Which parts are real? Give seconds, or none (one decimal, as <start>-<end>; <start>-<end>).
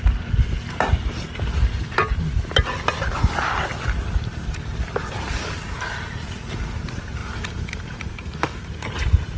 0.0-7.2; 8.7-9.4